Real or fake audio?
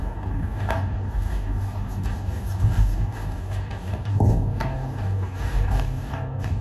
fake